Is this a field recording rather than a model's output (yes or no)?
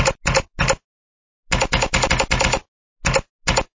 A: yes